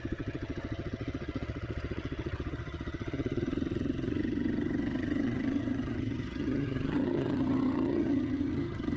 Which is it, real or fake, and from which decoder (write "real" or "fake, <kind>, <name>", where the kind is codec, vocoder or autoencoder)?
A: fake, vocoder, HiFi-GAN